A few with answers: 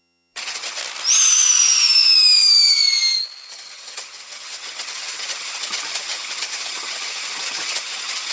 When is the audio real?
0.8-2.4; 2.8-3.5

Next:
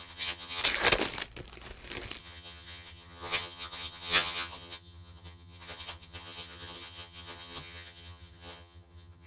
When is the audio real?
0.6-2.2

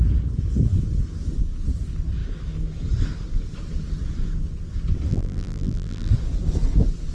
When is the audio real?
0.0-5.1; 6.1-7.1

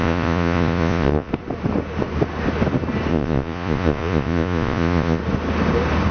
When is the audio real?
1.3-3.1; 5.2-6.1